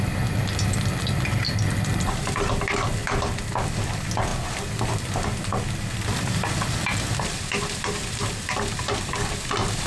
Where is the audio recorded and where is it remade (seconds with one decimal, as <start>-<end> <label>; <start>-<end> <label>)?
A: 0.0-9.9 recorded